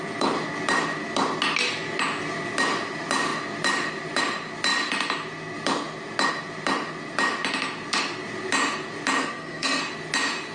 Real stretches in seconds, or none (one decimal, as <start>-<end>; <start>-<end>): 0.0-9.2; 9.8-10.5